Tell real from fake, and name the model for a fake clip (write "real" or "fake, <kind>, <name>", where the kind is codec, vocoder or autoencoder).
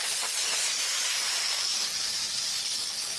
real